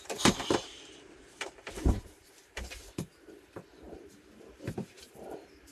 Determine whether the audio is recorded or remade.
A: remade